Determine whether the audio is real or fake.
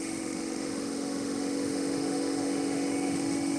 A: fake